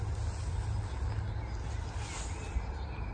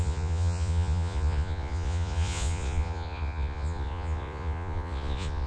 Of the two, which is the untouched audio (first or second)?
first